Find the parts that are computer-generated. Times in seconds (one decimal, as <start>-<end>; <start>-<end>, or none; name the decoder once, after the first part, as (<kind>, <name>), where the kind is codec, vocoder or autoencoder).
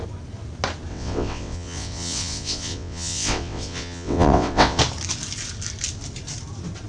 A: 0.9-4.8 (vocoder, WaveNeXt)